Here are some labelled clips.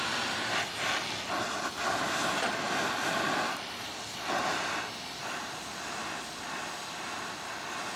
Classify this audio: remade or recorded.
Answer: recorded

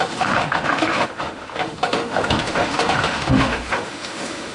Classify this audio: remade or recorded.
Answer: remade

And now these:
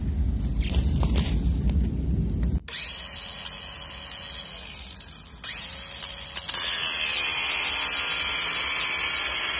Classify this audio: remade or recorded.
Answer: recorded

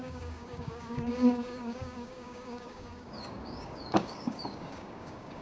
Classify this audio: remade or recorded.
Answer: remade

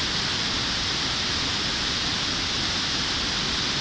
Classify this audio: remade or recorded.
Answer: recorded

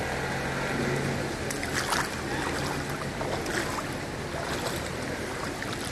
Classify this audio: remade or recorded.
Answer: recorded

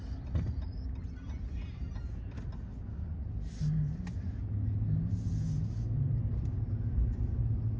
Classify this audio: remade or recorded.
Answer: recorded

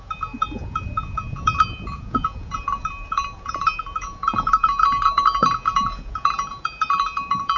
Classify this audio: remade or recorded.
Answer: remade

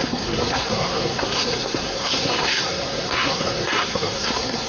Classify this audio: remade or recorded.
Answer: remade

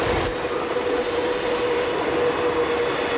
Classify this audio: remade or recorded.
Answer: recorded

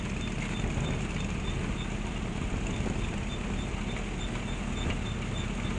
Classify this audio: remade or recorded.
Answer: recorded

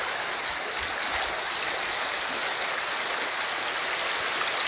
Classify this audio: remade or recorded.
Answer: recorded